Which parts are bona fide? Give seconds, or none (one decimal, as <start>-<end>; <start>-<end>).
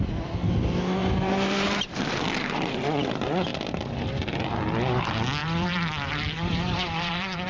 0.0-1.0; 2.0-5.4